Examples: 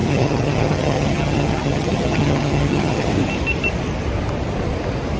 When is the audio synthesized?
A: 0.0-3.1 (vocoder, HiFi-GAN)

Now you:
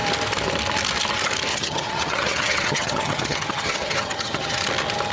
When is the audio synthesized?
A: 1.5-4.6 (vocoder, HiFi-GAN)

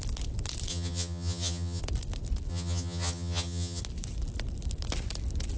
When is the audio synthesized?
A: 0.7-1.8 (vocoder, HiFi-GAN); 2.5-3.8

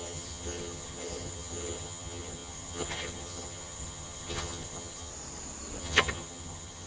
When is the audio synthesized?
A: 0.0-5.1 (vocoder, HiFi-GAN); 5.8-6.9

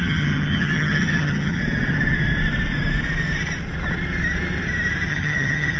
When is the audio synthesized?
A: 0.0-1.6 (vocoder, HiFi-GAN); 5.1-5.8

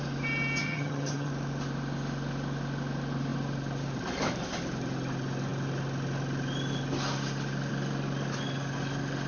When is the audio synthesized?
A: 0.6-1.3 (vocoder, HiFi-GAN)